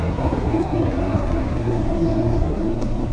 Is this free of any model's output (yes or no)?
no